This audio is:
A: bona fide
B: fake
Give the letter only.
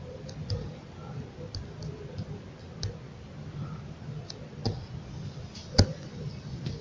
A